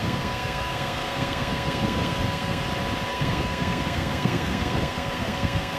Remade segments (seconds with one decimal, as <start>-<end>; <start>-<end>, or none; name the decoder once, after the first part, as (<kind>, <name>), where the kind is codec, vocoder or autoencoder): 0.0-2.6 (codec, SNAC); 3.1-5.8